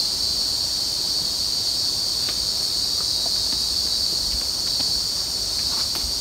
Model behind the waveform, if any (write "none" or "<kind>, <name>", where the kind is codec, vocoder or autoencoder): none